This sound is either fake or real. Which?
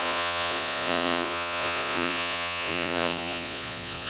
fake